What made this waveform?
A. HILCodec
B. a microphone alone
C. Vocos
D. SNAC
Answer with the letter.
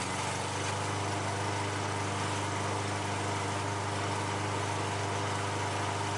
B